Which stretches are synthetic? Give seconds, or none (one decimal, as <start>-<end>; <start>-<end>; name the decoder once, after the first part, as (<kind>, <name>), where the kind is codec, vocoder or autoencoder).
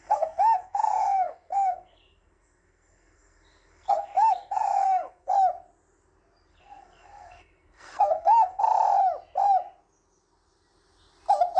0.0-5.3 (codec, SNAC); 6.5-8.6